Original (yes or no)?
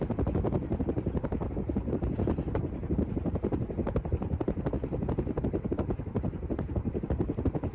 yes